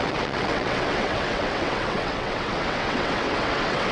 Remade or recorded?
remade